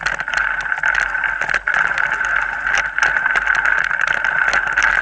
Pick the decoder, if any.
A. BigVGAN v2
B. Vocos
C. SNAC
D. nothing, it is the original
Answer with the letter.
D